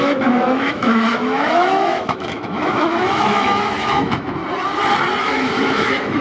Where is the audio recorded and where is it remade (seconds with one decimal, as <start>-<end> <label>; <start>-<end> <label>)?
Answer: 0.0-4.4 remade; 4.4-5.2 recorded; 5.2-6.2 remade